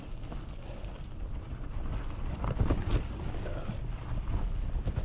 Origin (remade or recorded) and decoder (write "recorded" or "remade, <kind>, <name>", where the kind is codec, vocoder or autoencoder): recorded